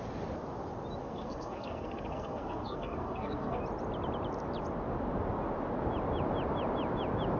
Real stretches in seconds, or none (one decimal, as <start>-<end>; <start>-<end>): 0.0-1.0; 3.6-7.4